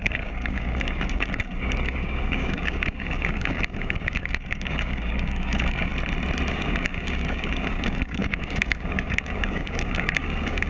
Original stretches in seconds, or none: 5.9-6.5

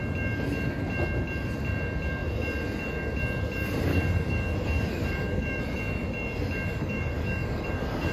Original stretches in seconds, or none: 0.0-3.9; 5.6-6.7

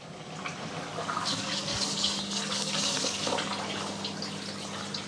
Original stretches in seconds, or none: 0.0-1.3; 3.5-5.1

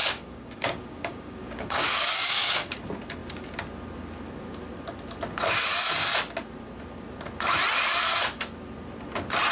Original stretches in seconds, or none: 2.8-9.5

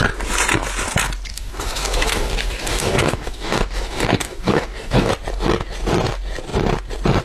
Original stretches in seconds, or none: 0.0-1.3; 5.1-7.2

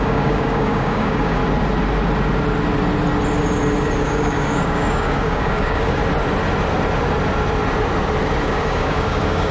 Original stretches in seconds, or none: 1.4-4.0; 6.0-8.4